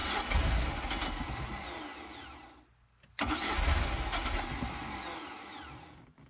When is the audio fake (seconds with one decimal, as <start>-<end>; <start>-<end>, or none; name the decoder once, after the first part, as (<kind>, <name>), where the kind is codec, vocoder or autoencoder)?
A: none